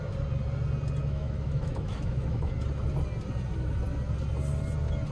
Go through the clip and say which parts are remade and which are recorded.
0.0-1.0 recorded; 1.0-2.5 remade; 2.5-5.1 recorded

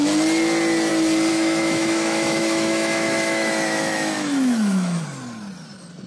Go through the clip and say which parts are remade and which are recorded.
0.0-1.3 recorded; 1.3-5.0 remade; 5.0-6.1 recorded

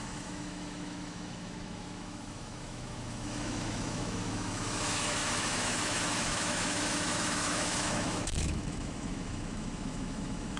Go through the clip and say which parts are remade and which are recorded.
0.0-10.6 remade

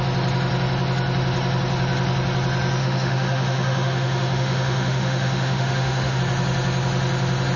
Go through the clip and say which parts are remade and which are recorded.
0.0-2.8 recorded; 2.8-6.2 remade; 6.2-7.6 recorded

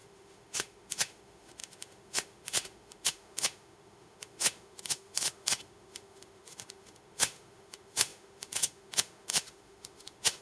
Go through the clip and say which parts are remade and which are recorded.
0.0-10.4 remade

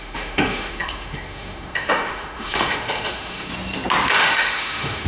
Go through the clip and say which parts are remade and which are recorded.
0.0-3.5 remade; 3.5-4.1 recorded; 4.1-5.1 remade

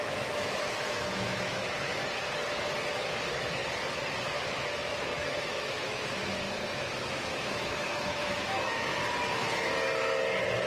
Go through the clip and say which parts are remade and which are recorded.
0.0-2.0 remade; 2.0-3.0 recorded; 3.0-3.6 remade; 3.6-4.2 recorded; 4.2-8.9 remade; 8.9-10.7 recorded